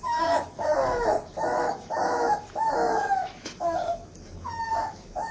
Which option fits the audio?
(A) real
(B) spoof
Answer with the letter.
B